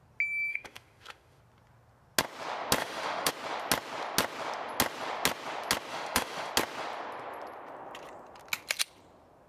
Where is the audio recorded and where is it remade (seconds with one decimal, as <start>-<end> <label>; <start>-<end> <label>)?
0.0-0.5 recorded; 0.5-1.4 remade; 1.4-2.8 recorded; 2.8-3.3 remade; 3.3-5.9 recorded; 5.9-6.5 remade; 6.5-9.5 recorded